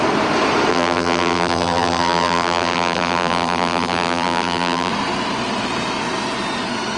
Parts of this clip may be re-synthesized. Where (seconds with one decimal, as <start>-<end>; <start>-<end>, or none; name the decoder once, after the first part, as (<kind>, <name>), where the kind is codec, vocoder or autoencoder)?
0.7-4.9 (vocoder, BigVGAN v2)